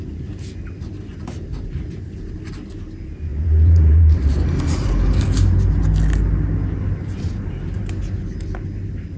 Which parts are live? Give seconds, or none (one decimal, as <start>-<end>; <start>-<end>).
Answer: 0.0-1.1; 2.1-3.3; 4.9-9.2